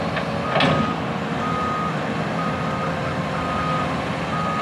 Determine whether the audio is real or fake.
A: real